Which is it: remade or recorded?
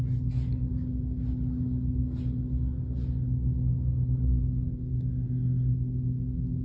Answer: recorded